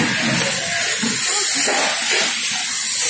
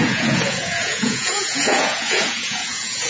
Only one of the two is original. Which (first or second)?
first